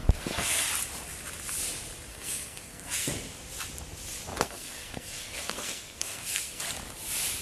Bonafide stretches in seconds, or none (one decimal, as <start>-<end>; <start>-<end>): 0.7-2.1; 3.1-4.3; 6.6-7.4